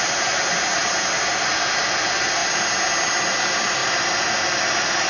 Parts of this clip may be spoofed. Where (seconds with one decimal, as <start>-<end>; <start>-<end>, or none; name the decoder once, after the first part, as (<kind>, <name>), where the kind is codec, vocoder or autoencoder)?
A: none